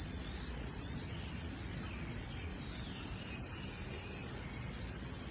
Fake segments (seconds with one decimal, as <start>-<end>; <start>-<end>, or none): 0.0-2.5; 4.3-5.3

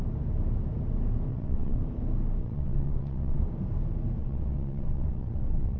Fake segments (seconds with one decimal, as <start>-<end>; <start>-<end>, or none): 1.3-1.8; 2.4-3.4; 4.2-5.8

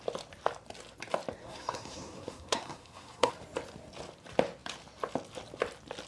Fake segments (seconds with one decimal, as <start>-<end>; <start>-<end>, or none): 1.4-3.3

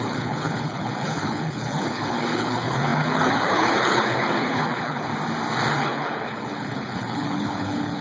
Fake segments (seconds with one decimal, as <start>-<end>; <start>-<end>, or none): 0.0-5.1; 5.7-8.0

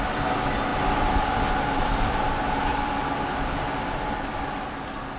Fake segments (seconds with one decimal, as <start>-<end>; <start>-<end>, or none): 3.0-4.6

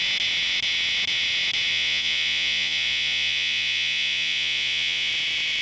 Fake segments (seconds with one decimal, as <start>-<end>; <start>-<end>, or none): 1.7-5.1

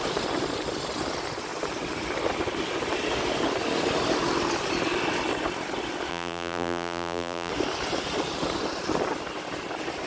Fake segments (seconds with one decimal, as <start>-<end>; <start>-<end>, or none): 6.1-7.5